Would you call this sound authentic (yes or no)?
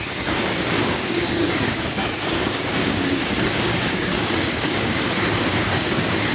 no